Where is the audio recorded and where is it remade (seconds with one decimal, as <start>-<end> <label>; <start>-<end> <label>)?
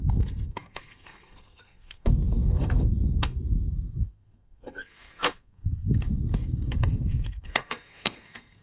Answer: 0.0-8.6 remade